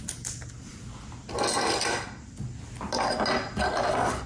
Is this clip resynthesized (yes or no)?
no